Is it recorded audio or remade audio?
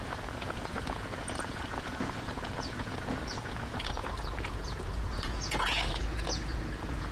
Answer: remade